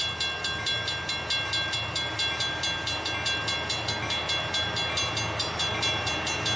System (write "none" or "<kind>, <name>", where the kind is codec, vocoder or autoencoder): none